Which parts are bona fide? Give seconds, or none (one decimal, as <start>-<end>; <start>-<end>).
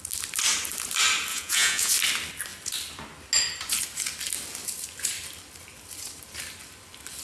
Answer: 0.0-1.3; 1.9-7.2